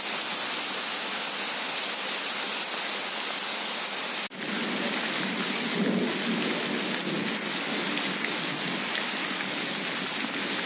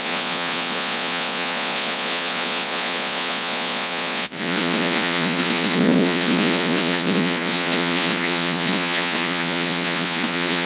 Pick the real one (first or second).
first